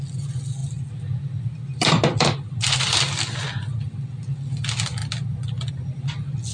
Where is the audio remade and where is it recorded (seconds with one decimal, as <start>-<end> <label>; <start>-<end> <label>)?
0.0-6.5 recorded